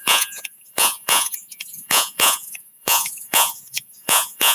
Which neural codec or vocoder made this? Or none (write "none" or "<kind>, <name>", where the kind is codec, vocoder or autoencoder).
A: vocoder, Vocos